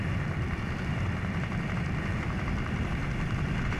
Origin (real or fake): real